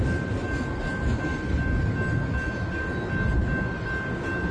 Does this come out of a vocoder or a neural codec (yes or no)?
no